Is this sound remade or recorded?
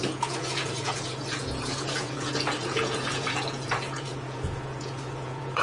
remade